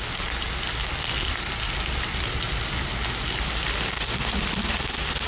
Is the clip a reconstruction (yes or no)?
no